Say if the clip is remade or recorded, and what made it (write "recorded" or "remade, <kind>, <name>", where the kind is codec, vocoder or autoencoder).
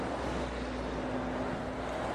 recorded